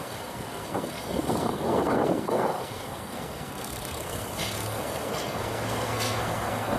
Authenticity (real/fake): fake